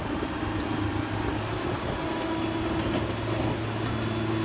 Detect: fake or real real